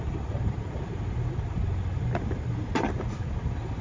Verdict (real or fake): fake